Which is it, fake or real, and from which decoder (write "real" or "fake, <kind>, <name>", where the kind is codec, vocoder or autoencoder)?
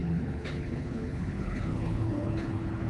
fake, codec, HILCodec